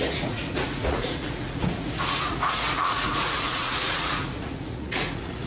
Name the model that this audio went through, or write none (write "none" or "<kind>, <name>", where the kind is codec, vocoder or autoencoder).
vocoder, Vocos